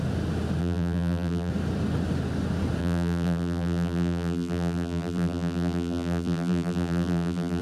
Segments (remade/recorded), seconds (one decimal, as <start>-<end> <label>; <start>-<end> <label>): 0.0-0.6 recorded; 0.6-1.5 remade; 1.5-2.8 recorded; 2.8-7.6 remade